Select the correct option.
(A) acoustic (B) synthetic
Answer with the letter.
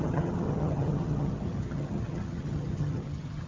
B